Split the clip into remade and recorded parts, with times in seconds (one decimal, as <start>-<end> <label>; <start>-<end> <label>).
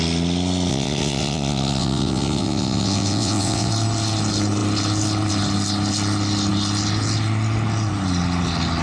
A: 0.0-0.7 recorded; 0.7-3.7 remade; 3.7-8.8 recorded